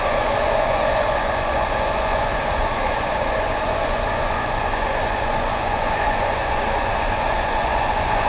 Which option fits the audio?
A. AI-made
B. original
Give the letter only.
A